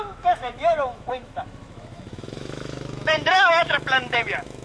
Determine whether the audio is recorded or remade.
remade